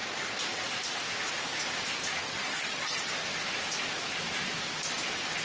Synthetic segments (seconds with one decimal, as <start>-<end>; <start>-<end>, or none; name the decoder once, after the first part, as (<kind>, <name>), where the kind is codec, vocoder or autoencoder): 2.3-3.0 (vocoder, HiFi-GAN)